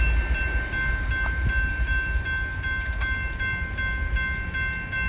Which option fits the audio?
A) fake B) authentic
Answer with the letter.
B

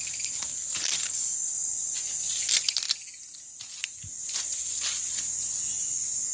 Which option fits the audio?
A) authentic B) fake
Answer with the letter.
A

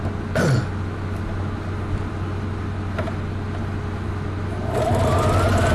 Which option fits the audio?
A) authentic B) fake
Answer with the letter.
A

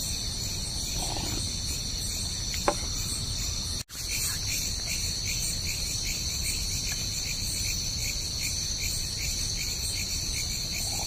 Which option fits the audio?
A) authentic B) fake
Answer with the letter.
A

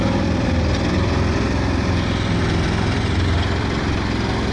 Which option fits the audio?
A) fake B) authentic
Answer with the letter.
A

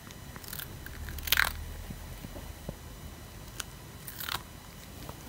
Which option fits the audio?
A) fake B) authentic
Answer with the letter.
B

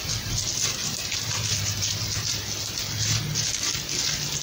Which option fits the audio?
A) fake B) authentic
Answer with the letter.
B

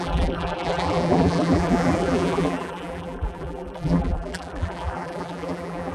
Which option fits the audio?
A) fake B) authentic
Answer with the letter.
A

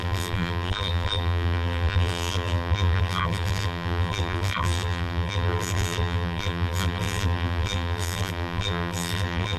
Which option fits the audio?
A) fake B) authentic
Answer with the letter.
A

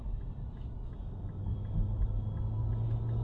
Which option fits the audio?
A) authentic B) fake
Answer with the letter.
A